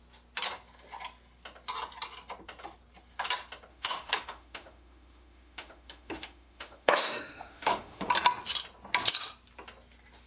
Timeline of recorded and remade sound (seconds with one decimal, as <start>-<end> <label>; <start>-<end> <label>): 0.0-3.7 recorded; 3.7-8.1 remade; 8.1-10.3 recorded